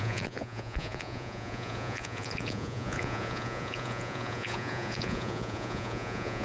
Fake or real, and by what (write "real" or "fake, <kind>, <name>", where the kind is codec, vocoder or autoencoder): fake, vocoder, Vocos